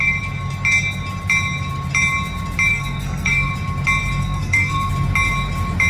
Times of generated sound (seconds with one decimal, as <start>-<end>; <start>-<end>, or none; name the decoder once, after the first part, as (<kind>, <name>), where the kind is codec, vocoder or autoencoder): 2.7-3.5 (codec, SNAC); 4.2-4.9